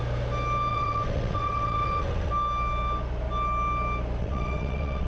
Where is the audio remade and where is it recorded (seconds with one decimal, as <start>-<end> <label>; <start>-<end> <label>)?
0.0-0.7 recorded; 0.7-2.3 remade; 2.3-4.2 recorded; 4.2-5.1 remade